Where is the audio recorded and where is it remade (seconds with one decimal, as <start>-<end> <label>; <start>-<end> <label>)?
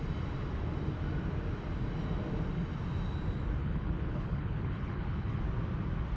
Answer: 0.0-3.6 recorded; 3.6-5.4 remade; 5.4-6.2 recorded